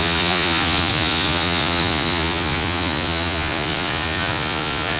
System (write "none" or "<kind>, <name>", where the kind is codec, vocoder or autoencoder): vocoder, Vocos